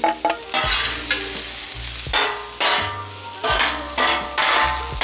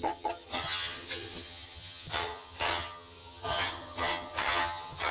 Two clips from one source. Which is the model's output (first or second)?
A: second